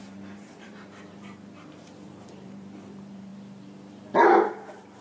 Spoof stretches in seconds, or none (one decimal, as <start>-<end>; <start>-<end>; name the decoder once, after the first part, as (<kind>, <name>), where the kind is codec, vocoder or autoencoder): 0.0-3.3 (vocoder, BigVGAN v2); 4.5-5.0